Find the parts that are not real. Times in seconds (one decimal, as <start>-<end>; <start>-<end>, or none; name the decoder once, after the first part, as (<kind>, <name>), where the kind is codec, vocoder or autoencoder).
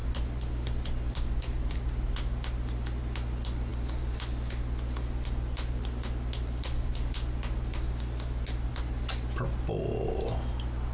none